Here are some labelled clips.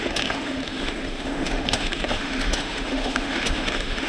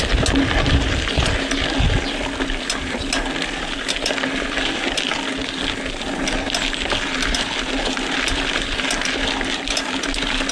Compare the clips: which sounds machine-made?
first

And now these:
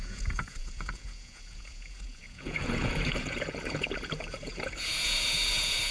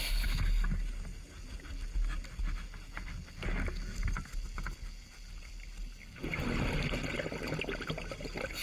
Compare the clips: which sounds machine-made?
first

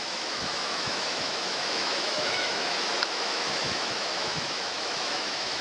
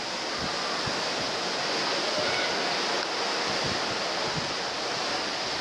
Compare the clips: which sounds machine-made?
first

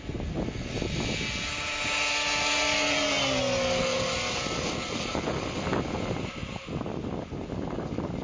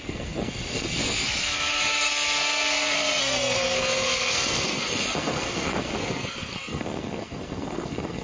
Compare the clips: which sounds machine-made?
second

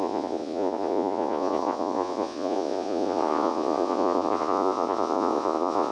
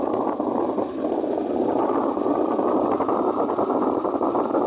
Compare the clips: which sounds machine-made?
first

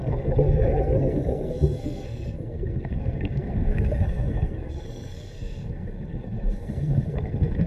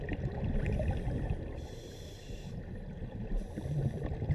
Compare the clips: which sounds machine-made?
first